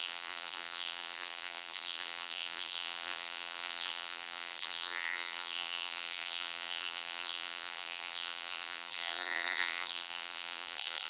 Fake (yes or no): yes